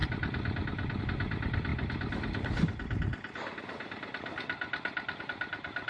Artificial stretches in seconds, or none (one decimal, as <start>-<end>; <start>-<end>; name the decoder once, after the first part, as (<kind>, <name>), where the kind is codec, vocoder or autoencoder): 0.0-1.7 (vocoder, BigVGAN v2); 5.2-5.9